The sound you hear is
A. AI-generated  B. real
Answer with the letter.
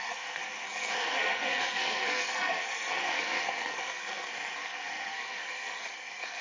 A